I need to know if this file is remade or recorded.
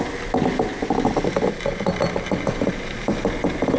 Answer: recorded